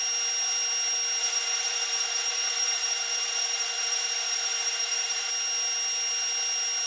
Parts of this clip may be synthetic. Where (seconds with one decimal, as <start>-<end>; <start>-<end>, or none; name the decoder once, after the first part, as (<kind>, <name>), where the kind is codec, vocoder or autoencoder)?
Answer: 1.2-5.3 (vocoder, BigVGAN v2)